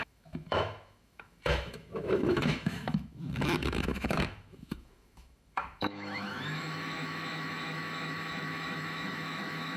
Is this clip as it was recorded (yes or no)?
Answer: no